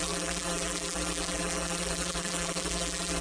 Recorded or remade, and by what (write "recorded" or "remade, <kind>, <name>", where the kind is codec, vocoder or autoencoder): remade, vocoder, BigVGAN v2